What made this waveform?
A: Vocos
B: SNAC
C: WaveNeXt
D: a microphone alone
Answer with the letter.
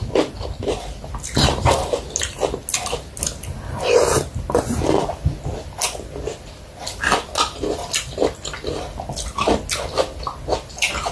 D